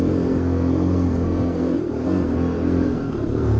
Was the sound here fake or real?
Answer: fake